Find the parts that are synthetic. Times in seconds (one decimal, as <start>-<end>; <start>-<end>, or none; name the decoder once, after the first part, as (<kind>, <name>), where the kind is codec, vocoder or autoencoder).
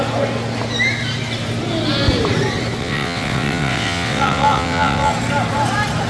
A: 2.8-5.1 (vocoder, WaveNeXt)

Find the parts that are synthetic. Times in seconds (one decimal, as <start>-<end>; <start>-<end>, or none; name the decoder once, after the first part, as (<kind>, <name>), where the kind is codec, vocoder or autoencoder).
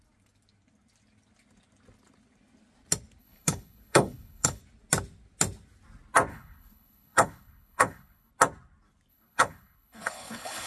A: 3.2-4.6 (codec, HILCodec); 6.3-8.3; 9.1-10.7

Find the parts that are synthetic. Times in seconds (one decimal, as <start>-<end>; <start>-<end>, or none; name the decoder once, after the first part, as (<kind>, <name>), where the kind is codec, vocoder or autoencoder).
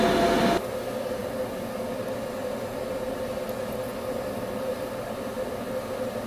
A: 1.2-1.7 (vocoder, BigVGAN v2); 3.9-4.9